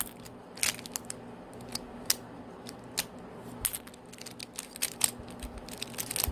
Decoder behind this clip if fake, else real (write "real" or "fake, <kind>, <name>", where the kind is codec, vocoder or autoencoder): real